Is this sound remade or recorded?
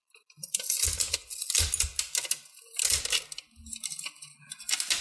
recorded